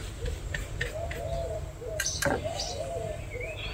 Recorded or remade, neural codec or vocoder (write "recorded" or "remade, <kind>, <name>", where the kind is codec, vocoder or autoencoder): recorded